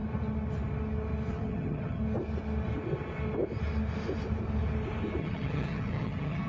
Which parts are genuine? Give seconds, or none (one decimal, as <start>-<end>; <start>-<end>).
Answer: 0.0-1.3; 2.0-5.2